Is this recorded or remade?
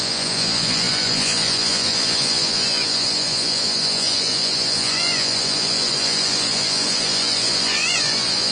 remade